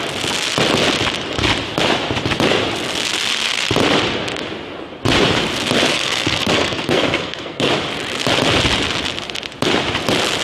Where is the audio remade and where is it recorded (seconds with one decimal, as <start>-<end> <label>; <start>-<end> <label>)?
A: 0.0-5.9 recorded; 5.9-7.7 remade; 7.7-10.4 recorded

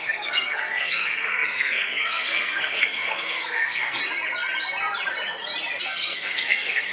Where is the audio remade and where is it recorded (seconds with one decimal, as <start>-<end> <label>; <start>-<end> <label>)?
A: 0.0-4.0 remade; 4.0-5.8 recorded; 5.8-6.9 remade

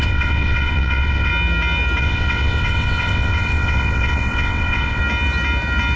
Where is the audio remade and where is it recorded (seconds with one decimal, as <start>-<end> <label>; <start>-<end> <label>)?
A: 0.0-1.3 remade; 1.3-2.0 recorded; 2.0-5.0 remade; 5.0-6.0 recorded

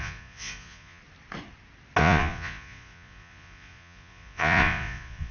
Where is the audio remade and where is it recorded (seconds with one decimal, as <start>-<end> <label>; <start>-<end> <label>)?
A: 0.0-1.0 remade; 1.0-2.0 recorded; 2.0-5.3 remade

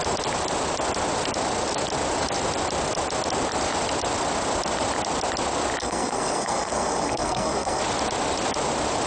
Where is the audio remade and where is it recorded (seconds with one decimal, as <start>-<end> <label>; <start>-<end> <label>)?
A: 0.0-5.8 recorded; 5.8-7.8 remade; 7.8-9.1 recorded